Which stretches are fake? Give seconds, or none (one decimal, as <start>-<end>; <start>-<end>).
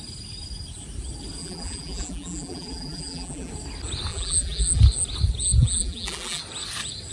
1.4-3.5; 4.1-4.8; 5.6-6.4